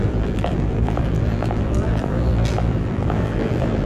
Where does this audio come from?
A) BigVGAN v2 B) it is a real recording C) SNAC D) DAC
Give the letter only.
A